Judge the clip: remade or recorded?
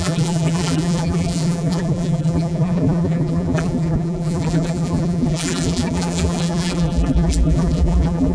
remade